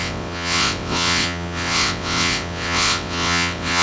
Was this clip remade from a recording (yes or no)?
yes